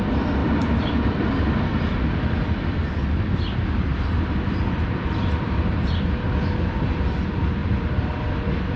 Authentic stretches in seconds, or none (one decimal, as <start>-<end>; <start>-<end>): 0.0-0.4; 1.2-3.9; 6.2-7.6; 8.2-8.8